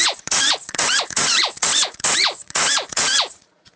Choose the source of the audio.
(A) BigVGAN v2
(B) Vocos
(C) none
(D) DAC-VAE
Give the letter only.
B